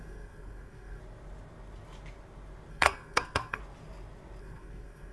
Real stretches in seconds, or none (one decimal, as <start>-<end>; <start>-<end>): 1.0-2.7; 3.6-4.4